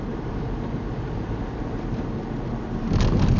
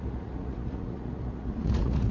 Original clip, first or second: first